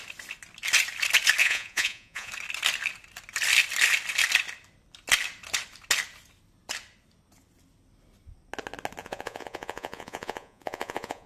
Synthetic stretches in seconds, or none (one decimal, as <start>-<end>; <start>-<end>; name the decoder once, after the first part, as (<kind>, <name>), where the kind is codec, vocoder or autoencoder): 1.4-2.3 (vocoder, Vocos); 9.0-11.3